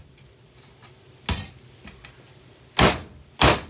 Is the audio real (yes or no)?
yes